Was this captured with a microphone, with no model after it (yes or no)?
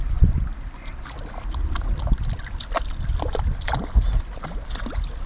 yes